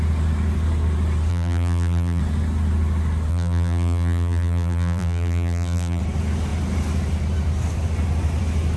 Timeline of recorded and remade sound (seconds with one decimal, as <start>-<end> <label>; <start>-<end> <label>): 0.0-1.3 recorded; 1.3-2.2 remade; 2.2-3.3 recorded; 3.3-6.0 remade; 6.0-8.8 recorded